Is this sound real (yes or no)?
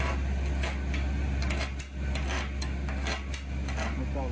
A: yes